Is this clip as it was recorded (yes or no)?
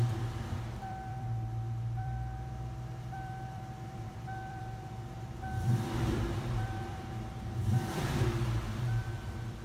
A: no